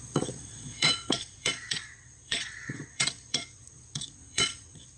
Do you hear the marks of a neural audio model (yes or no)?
yes